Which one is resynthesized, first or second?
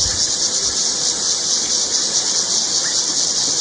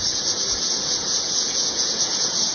second